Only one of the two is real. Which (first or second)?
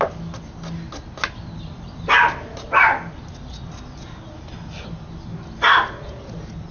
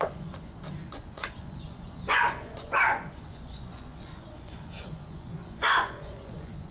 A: first